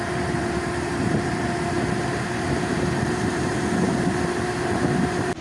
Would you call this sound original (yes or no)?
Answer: no